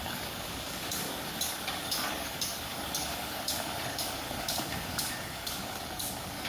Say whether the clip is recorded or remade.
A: remade